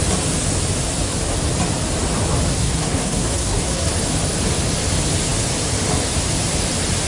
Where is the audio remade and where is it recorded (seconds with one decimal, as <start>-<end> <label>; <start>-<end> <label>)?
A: 0.0-2.5 recorded; 2.5-3.9 remade; 3.9-7.1 recorded